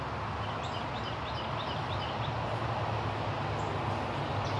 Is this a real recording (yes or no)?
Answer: yes